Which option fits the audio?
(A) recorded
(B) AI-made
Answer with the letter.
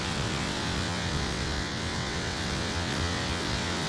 B